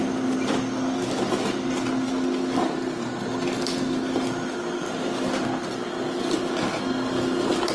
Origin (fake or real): real